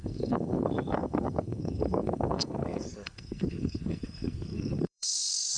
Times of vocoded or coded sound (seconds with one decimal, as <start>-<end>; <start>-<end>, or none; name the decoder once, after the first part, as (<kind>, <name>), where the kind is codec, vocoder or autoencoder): 0.0-5.6 (codec, SNAC)